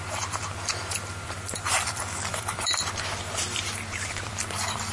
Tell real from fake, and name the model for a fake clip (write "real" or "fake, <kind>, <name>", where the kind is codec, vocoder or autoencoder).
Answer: fake, vocoder, BigVGAN v2